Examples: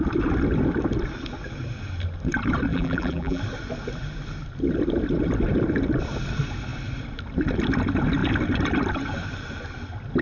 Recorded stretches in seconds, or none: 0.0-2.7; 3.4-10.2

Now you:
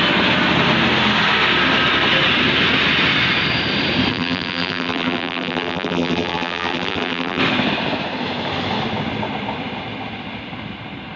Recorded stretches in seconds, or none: 0.0-4.1; 7.4-11.2